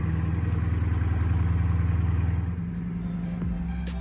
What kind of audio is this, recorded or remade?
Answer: recorded